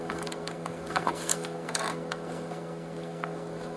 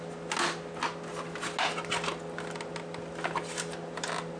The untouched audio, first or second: second